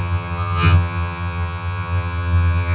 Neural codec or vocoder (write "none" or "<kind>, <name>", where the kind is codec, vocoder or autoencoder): vocoder, HiFi-GAN